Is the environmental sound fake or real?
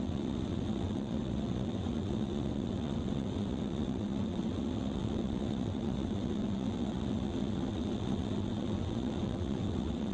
fake